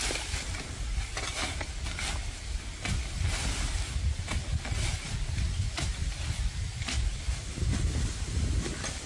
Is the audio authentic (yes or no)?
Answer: yes